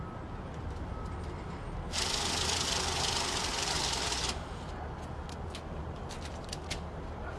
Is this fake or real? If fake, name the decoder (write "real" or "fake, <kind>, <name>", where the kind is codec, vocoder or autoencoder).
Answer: real